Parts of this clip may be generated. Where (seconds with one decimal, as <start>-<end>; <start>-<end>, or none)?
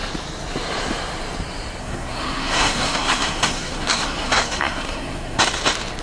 1.8-5.4